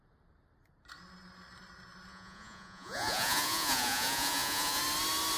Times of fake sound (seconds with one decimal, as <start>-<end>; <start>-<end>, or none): 2.1-4.8